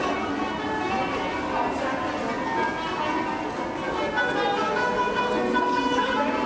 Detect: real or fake real